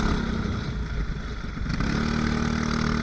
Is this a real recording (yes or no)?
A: yes